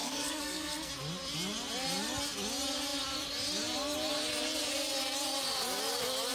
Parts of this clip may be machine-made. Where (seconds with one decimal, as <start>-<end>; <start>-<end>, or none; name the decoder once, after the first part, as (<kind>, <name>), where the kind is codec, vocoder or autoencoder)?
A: 0.0-0.9 (codec, SNAC)